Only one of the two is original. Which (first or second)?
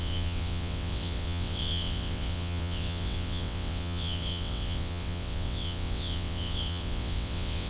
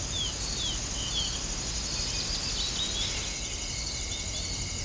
second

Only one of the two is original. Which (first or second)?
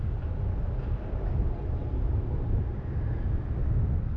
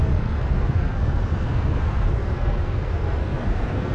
first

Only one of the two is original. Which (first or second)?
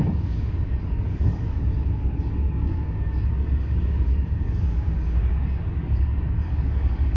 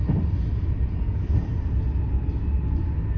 second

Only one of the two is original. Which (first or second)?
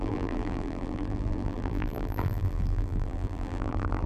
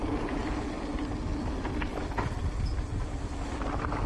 second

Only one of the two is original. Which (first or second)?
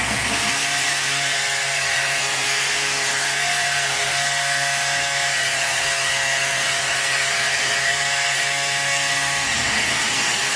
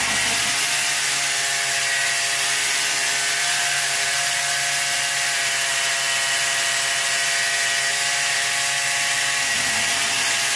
second